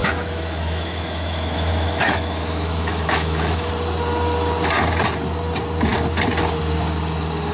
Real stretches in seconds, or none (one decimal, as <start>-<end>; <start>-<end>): 3.7-7.5